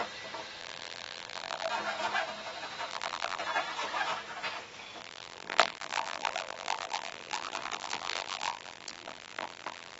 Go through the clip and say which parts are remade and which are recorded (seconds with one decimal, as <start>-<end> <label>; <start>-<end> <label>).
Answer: 0.0-0.6 recorded; 0.6-1.7 remade; 1.7-2.9 recorded; 2.9-3.4 remade; 3.4-5.0 recorded; 5.0-10.0 remade